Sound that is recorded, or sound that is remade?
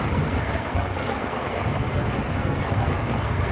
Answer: remade